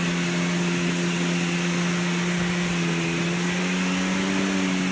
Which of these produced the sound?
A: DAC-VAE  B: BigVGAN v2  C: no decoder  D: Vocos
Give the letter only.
C